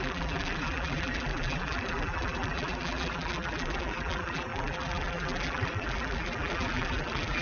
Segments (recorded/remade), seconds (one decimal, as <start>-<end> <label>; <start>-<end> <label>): 0.0-7.4 remade